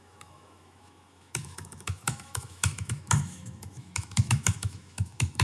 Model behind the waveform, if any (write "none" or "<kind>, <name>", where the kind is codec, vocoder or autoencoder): autoencoder, DAC-VAE